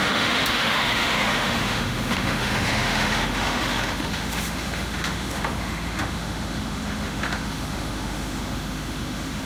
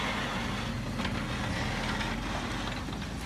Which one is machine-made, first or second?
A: first